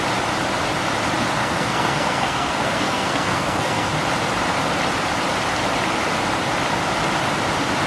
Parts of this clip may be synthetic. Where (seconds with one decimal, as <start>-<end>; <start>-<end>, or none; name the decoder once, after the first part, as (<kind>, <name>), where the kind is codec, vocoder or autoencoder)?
1.4-3.9 (codec, SNAC)